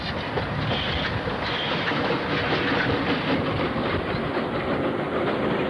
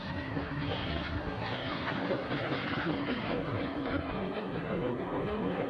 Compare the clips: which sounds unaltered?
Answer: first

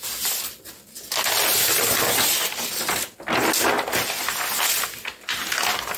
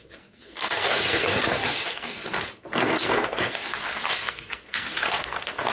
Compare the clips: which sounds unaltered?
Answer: first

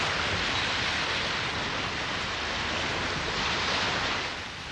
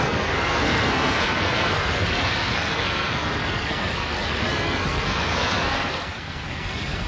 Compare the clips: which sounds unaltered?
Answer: first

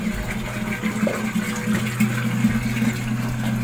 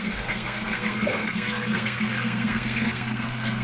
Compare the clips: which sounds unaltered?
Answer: first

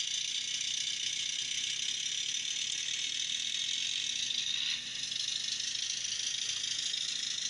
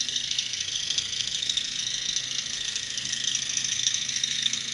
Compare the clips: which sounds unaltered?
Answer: first